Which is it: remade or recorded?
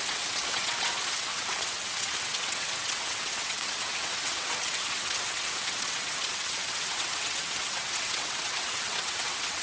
remade